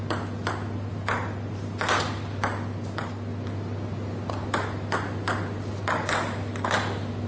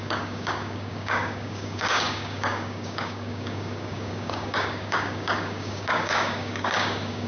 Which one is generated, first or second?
second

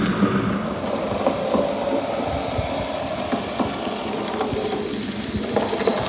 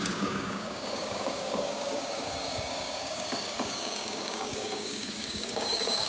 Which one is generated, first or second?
second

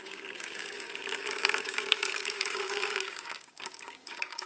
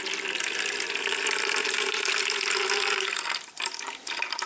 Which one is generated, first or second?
first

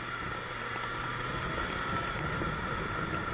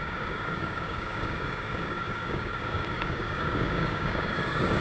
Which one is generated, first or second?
second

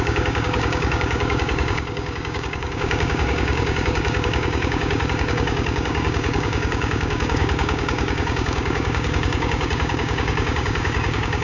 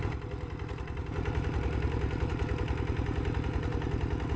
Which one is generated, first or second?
first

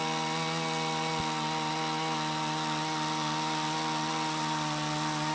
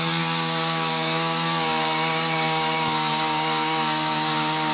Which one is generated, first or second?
second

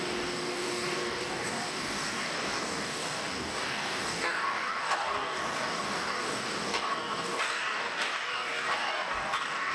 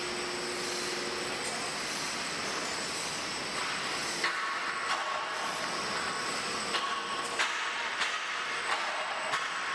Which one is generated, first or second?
first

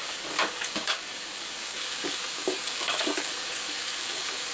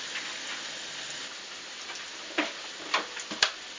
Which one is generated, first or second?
first